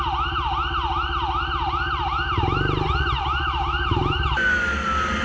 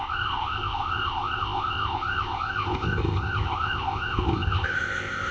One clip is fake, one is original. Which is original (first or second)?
first